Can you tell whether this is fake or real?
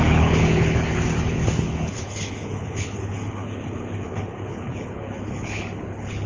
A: fake